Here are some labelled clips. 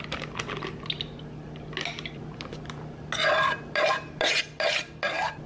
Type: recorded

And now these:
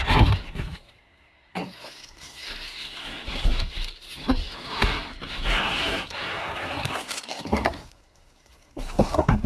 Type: remade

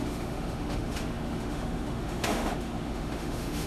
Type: remade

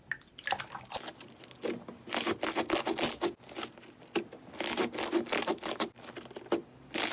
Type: recorded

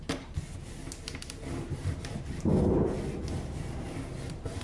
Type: recorded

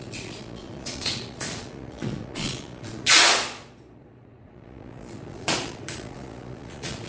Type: remade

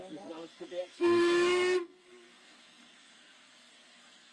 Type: remade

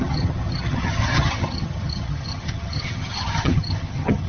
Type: remade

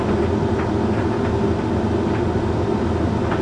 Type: recorded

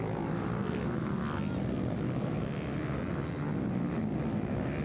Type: recorded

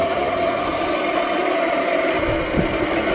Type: recorded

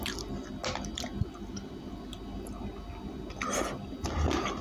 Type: recorded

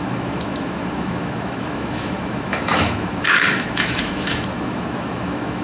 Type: remade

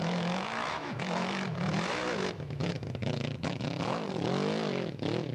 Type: remade